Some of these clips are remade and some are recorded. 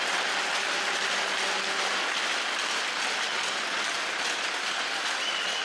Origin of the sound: recorded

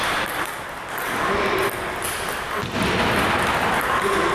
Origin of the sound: recorded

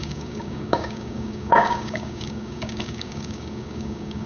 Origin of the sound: remade